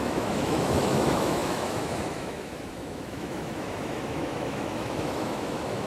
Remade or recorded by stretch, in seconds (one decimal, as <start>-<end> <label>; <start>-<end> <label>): 0.0-5.9 remade